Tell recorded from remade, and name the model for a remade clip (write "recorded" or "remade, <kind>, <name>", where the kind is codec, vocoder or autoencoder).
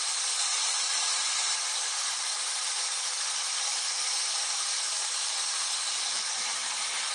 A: recorded